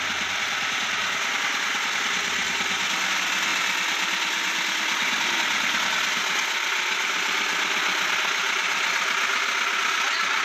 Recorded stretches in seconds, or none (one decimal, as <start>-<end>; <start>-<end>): 0.0-10.4